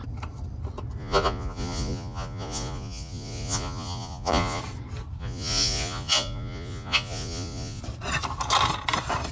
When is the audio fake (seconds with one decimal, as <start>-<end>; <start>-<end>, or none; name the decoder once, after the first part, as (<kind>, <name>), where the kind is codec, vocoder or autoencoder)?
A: 1.0-4.6 (vocoder, Vocos); 5.2-7.8